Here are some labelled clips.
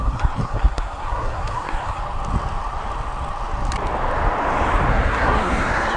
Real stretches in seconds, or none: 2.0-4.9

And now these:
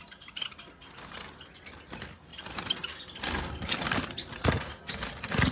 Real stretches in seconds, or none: 0.0-5.5